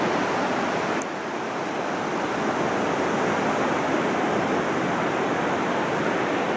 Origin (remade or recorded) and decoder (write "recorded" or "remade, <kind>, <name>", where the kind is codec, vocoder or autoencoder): recorded